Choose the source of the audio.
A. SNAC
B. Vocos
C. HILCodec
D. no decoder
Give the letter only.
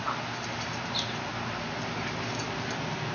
D